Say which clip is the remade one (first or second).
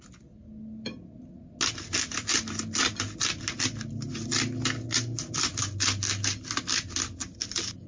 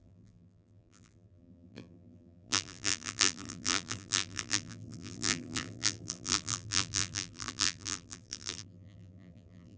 second